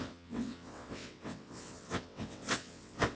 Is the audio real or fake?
fake